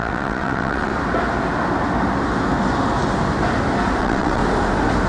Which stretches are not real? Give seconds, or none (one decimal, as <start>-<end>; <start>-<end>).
0.0-0.9; 4.0-4.4